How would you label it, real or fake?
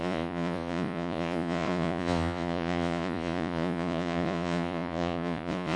fake